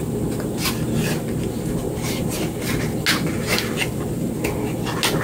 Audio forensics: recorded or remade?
recorded